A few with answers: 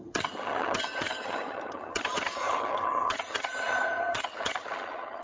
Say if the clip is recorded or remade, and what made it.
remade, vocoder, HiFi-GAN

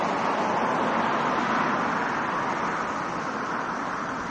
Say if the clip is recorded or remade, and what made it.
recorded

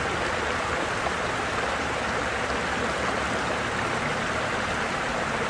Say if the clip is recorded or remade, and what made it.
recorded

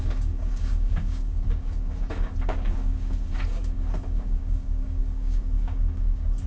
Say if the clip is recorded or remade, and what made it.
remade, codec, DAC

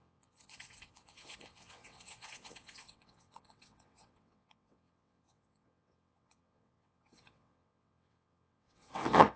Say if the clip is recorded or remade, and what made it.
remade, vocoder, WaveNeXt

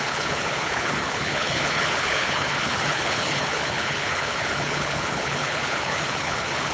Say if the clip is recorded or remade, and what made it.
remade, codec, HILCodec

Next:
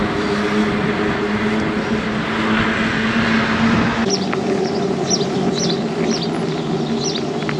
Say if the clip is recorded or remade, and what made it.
recorded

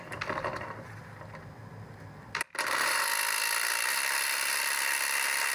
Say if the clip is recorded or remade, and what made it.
recorded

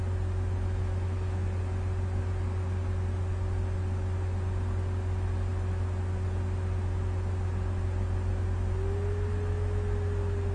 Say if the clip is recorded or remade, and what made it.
recorded